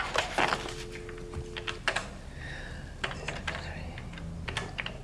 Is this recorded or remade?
recorded